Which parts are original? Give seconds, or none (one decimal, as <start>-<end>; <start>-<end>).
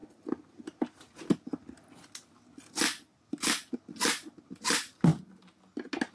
0.0-6.1